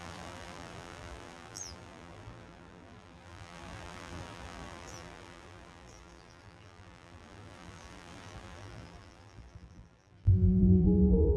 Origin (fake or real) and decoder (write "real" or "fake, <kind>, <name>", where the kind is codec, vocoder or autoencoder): fake, vocoder, BigVGAN v2